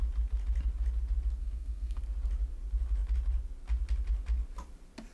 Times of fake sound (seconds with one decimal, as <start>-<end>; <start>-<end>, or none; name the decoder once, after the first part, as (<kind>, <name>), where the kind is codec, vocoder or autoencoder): 1.4-2.0 (codec, SNAC)